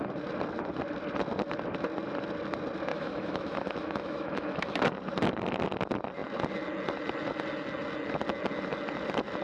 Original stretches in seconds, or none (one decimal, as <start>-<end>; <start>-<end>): 0.0-2.9; 4.8-9.4